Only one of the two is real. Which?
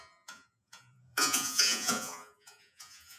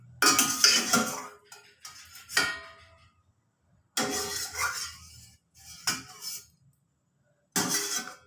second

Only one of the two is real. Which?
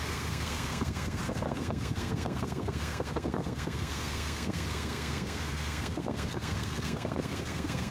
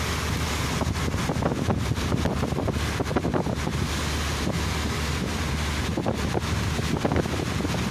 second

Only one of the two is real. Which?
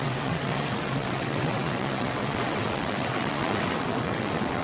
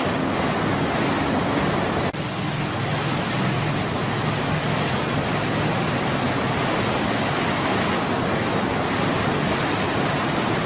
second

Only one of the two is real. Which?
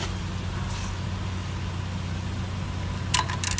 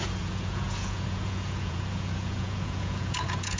first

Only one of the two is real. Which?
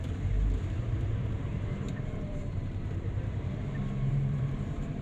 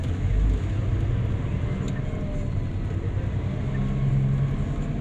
second